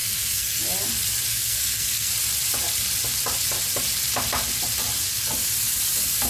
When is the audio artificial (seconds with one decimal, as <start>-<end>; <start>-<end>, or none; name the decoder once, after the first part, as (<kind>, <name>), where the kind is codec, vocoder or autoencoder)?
0.0-0.6 (codec, SNAC); 1.3-2.1